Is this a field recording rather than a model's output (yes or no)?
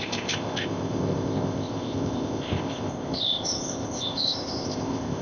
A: no